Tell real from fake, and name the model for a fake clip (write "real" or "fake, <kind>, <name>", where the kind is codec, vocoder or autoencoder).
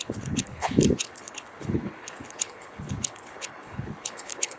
fake, codec, HILCodec